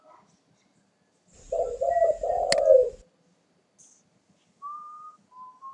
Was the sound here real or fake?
real